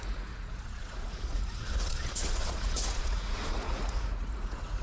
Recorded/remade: remade